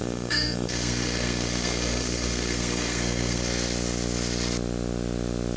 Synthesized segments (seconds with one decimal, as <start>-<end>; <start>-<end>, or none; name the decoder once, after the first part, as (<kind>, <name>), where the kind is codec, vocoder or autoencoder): 0.0-3.4 (codec, SNAC)